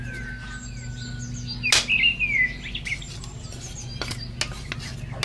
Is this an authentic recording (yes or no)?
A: yes